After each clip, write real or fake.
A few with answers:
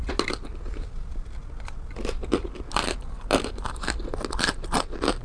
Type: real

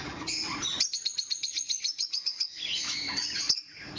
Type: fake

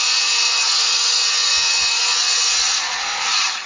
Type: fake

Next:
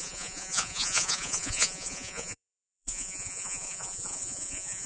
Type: fake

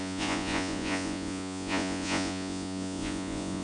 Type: fake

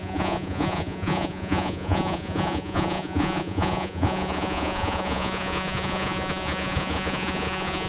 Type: fake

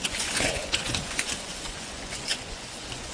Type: fake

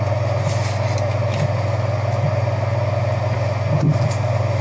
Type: real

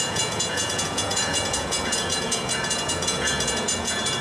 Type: fake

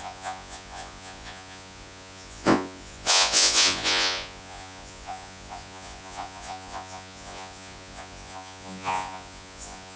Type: fake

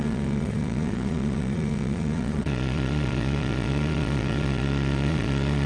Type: fake